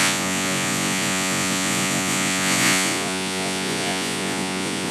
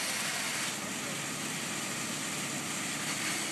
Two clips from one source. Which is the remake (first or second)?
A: first